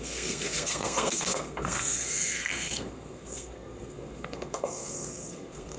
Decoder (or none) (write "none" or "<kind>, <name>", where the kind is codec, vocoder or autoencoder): codec, SNAC